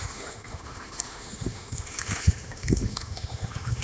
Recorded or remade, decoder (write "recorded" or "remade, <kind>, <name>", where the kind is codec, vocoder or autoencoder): remade, autoencoder, DAC-VAE